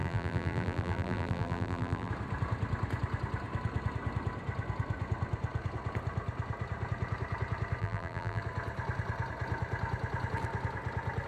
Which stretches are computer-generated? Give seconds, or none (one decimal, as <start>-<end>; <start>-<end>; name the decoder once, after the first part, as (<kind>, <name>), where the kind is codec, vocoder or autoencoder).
0.0-2.1 (vocoder, BigVGAN v2); 7.8-8.4